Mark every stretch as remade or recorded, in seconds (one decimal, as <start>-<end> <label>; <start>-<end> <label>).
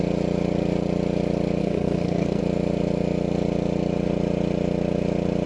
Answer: 0.0-1.6 recorded; 1.6-2.4 remade; 2.4-5.5 recorded